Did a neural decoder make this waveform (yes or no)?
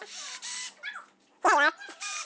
no